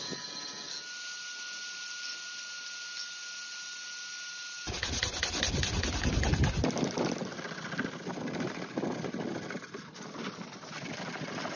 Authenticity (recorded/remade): recorded